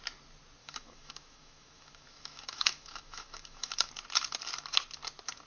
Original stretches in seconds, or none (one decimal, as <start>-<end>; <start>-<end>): 0.0-0.6; 3.9-5.5